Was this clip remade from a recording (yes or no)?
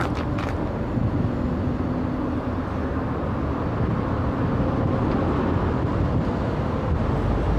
no